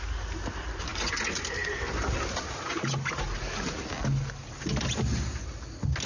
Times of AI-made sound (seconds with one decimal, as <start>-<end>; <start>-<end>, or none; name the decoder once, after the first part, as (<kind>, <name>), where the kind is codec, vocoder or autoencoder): none